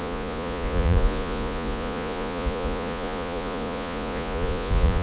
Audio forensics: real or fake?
fake